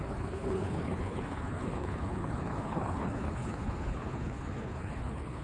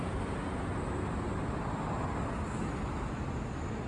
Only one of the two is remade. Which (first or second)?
first